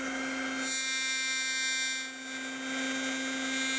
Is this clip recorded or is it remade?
recorded